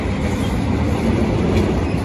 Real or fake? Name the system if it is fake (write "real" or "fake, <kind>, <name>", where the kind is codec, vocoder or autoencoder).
fake, vocoder, BigVGAN v2